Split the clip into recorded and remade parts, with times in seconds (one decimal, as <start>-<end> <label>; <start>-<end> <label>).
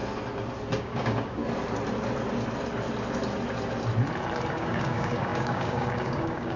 0.0-0.8 recorded; 0.8-1.4 remade; 1.4-4.5 recorded; 4.5-6.6 remade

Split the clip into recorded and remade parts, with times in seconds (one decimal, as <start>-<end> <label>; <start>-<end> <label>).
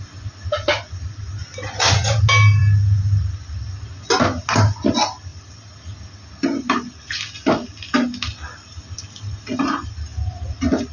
0.0-10.9 recorded